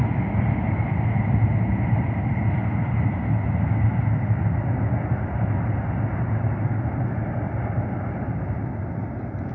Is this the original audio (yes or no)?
yes